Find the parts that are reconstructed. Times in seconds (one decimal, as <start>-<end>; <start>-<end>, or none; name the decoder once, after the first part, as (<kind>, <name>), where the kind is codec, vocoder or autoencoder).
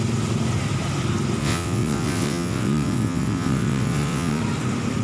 1.4-4.4 (vocoder, WaveNeXt)